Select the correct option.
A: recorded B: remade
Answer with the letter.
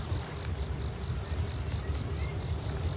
A